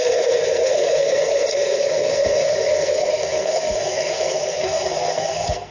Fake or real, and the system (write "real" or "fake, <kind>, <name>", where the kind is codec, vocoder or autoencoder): fake, codec, SNAC